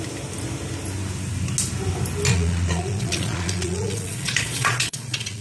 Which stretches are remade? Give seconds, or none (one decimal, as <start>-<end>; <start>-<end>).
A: 2.3-5.4